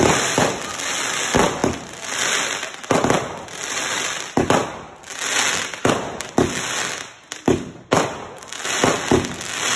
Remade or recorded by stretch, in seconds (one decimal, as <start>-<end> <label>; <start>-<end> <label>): 0.0-9.8 recorded